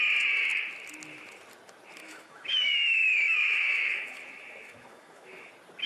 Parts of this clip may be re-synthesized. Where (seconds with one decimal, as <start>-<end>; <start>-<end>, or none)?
2.0-5.5